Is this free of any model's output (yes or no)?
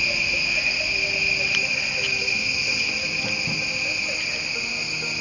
yes